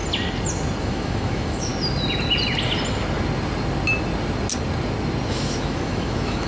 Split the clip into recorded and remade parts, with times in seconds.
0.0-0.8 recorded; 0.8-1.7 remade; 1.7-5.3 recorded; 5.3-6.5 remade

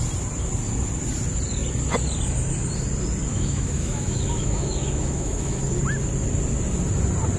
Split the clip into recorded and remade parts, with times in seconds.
0.0-3.3 recorded; 3.3-5.6 remade; 5.6-7.4 recorded

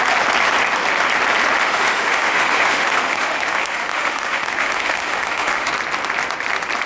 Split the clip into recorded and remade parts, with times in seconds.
0.0-1.6 recorded; 1.6-5.7 remade; 5.7-6.9 recorded

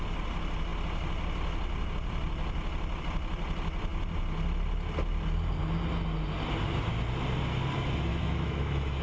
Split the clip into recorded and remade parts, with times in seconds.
0.0-8.1 recorded; 8.1-9.0 remade

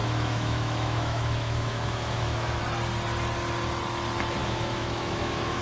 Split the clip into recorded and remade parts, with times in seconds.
0.0-2.6 remade; 2.6-4.4 recorded; 4.4-5.6 remade